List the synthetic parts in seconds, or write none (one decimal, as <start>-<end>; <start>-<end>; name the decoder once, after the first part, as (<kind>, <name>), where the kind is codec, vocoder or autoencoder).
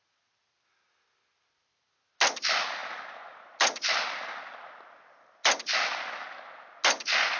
none